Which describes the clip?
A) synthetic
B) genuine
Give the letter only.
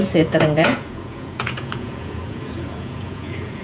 A